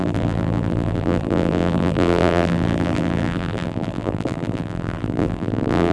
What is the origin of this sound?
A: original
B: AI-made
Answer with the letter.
B